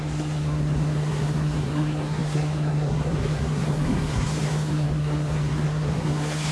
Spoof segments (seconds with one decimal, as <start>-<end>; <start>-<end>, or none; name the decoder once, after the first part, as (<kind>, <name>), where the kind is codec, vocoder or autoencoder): 0.0-6.5 (codec, SNAC)